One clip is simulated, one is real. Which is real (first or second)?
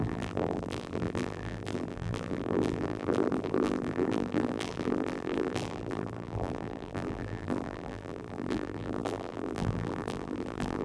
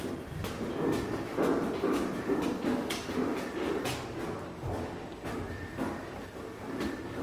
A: second